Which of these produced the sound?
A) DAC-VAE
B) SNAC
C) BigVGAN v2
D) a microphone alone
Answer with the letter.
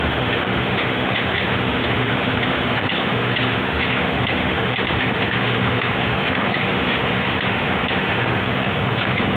A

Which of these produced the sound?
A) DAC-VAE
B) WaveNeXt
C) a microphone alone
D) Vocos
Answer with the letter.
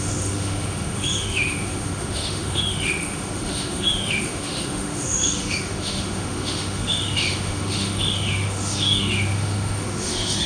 A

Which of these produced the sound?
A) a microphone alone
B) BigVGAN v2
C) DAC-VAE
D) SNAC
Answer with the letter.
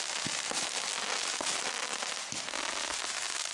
A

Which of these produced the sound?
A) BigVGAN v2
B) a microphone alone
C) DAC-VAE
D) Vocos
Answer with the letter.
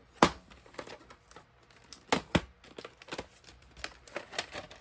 B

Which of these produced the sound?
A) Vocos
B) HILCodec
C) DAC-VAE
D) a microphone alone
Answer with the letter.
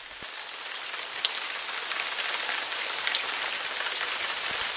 D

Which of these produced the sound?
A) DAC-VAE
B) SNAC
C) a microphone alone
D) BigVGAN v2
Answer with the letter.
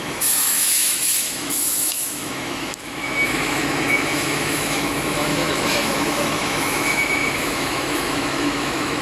A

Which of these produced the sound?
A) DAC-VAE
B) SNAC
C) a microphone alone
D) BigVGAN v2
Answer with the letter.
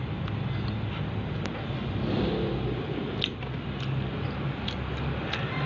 C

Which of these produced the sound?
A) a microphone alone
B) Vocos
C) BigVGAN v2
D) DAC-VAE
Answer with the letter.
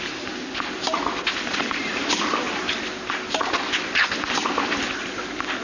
A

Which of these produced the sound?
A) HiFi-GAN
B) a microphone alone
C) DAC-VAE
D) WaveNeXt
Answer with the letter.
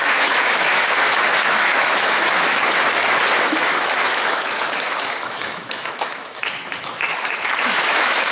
C